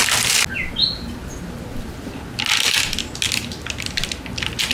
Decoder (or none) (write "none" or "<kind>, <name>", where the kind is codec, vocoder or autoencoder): none